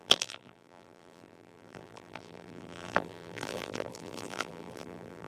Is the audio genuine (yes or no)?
no